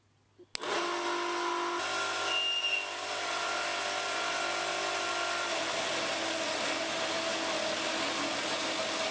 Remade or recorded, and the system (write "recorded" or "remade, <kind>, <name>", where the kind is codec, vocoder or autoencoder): recorded